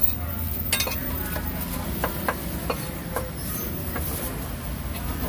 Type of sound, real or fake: real